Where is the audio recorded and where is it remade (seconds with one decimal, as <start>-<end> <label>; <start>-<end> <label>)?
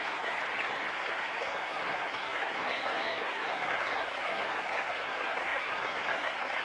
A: 0.0-0.4 remade; 0.4-0.9 recorded; 0.9-6.6 remade